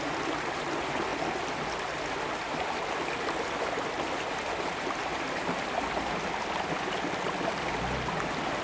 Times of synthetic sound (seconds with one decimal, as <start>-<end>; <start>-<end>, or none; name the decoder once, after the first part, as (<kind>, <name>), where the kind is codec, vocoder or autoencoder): none